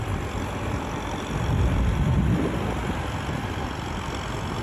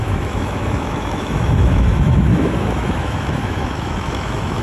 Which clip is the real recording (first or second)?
first